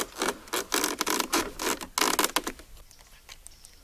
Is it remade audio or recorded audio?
recorded